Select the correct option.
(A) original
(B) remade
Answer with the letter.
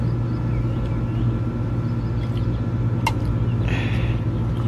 A